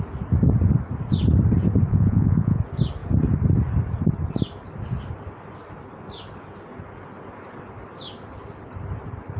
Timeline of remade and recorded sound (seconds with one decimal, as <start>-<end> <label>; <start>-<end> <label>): 0.0-1.9 recorded; 1.9-2.6 remade; 2.6-9.4 recorded

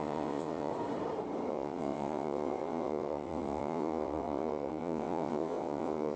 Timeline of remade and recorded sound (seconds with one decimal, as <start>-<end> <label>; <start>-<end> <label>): 0.0-0.7 remade; 0.7-1.5 recorded; 1.5-6.2 remade